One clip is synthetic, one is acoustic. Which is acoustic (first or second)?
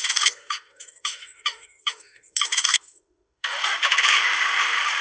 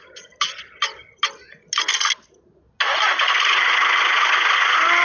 second